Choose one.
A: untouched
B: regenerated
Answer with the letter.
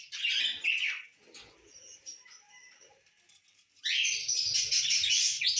B